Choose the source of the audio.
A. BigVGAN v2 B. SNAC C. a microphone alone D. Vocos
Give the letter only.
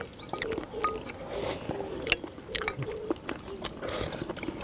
C